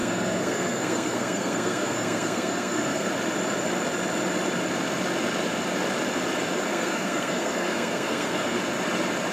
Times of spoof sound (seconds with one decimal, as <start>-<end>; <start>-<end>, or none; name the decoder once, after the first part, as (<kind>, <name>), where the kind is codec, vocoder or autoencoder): 0.0-3.1 (codec, SNAC); 6.7-8.6